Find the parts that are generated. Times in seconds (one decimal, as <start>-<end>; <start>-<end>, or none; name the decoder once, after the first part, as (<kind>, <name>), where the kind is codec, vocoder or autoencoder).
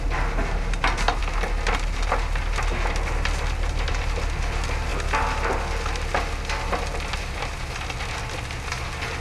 none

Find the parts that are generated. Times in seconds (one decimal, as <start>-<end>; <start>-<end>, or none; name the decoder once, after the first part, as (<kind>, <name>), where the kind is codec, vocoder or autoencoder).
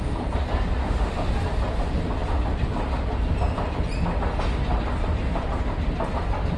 0.8-1.3 (autoencoder, DAC-VAE)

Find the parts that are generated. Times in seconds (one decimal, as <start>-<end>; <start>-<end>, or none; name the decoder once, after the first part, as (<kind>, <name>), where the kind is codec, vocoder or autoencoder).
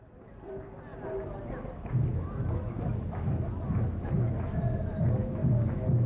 2.1-6.1 (autoencoder, DAC-VAE)